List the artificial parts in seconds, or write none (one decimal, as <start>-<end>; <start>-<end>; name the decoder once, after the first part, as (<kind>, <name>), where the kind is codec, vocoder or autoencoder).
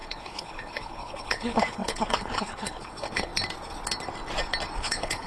0.0-3.3 (codec, HILCodec); 4.8-5.3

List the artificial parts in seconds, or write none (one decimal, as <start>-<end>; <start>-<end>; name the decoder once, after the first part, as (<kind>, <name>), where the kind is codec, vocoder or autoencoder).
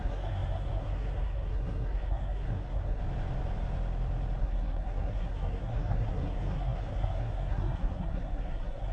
0.0-3.0 (codec, SNAC); 4.4-8.9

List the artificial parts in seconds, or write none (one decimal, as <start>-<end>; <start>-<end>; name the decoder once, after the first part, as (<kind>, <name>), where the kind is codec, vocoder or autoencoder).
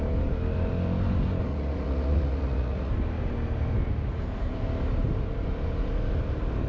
1.5-2.9 (vocoder, Vocos)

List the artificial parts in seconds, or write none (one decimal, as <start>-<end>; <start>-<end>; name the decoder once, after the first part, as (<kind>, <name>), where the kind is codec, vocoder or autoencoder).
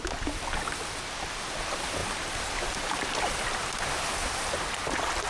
none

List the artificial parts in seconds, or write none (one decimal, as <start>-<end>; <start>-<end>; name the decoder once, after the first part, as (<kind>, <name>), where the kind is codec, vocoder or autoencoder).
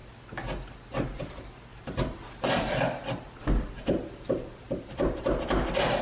0.0-0.7 (vocoder, BigVGAN v2); 1.7-5.3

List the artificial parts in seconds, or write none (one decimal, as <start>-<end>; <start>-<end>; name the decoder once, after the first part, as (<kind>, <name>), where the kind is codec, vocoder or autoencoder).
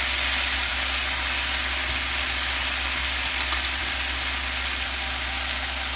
none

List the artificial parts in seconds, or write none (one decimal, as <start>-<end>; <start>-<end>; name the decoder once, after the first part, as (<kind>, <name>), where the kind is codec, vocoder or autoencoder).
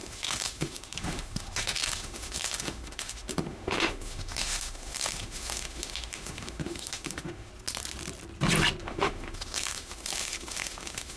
0.0-7.5 (autoencoder, DAC-VAE); 8.8-11.2